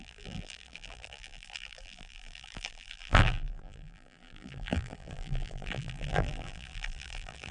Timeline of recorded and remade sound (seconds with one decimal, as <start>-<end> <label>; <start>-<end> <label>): 0.0-7.5 remade